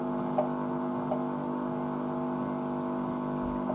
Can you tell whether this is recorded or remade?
recorded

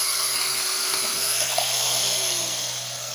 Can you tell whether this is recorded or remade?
remade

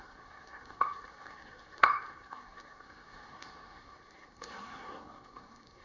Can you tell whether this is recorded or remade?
remade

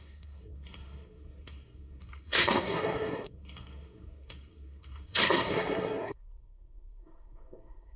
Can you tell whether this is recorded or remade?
remade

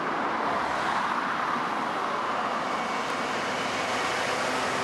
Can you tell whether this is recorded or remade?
recorded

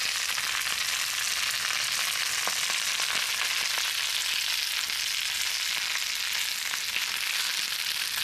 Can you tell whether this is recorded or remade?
recorded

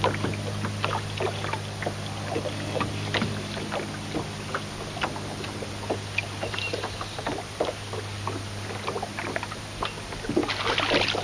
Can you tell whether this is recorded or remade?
recorded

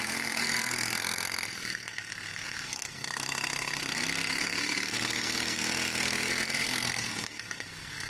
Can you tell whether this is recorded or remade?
remade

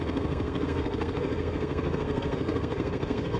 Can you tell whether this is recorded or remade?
remade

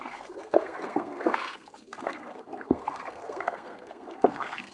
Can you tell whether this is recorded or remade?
remade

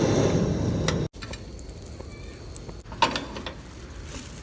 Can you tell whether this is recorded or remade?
recorded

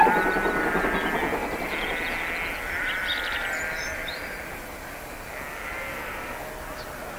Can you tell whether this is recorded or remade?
recorded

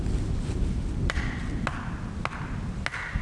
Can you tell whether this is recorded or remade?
recorded